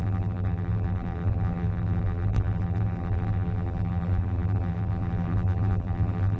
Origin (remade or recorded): remade